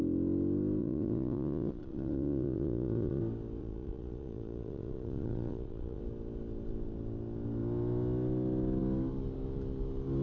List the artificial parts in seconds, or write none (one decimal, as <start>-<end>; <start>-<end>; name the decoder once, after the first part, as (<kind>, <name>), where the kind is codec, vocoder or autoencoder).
0.8-3.2 (vocoder, Vocos); 3.6-6.0